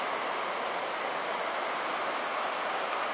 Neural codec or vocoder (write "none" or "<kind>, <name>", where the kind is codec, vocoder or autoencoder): none